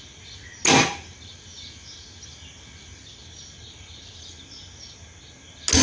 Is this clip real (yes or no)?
yes